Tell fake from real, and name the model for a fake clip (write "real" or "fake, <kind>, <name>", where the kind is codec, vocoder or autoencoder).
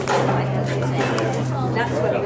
real